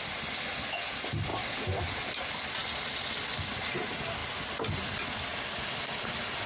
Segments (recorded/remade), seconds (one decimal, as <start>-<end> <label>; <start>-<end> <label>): 0.0-6.5 recorded